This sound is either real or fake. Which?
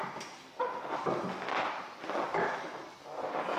real